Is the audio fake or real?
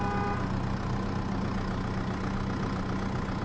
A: real